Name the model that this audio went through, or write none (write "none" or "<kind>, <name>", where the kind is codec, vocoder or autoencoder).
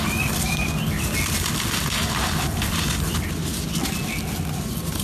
none